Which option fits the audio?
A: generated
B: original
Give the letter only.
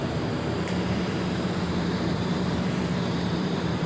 A